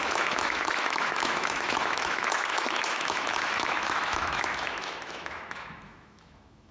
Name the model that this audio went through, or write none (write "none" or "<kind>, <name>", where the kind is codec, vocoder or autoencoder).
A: autoencoder, DAC-VAE